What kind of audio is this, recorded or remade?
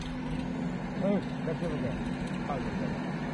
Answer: recorded